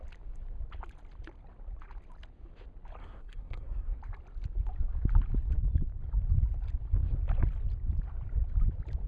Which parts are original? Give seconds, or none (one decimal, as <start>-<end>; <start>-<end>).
0.0-3.0; 4.0-9.1